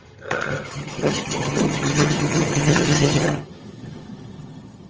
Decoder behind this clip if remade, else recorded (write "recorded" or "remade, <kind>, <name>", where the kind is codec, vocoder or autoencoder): remade, vocoder, HiFi-GAN